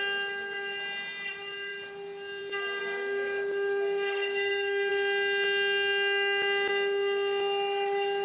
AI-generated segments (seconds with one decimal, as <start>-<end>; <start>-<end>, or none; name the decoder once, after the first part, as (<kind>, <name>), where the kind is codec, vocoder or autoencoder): 2.8-4.9 (codec, DAC)